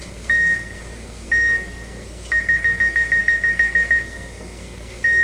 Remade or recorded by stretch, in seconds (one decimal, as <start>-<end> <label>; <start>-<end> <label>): 0.0-5.2 remade